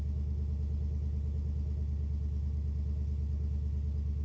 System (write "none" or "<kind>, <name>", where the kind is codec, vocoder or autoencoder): none